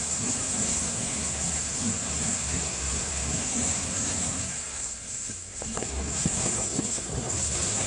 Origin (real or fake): fake